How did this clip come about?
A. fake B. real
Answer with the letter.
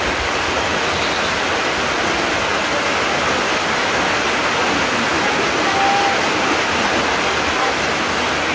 B